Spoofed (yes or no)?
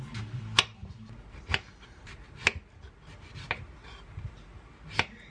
no